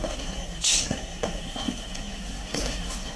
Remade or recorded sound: remade